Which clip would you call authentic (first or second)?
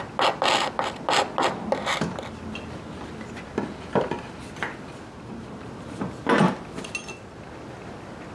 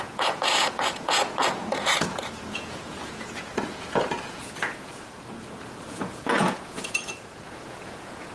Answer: first